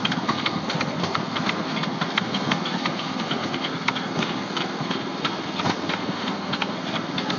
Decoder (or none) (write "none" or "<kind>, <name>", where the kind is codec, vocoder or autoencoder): codec, SNAC